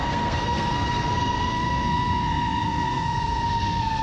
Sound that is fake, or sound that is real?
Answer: fake